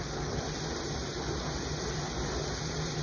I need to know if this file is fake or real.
real